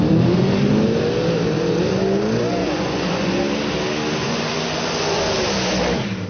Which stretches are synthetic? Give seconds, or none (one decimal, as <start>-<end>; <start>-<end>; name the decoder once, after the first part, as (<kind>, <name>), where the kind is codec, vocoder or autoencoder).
2.6-3.4 (vocoder, Vocos); 4.2-5.2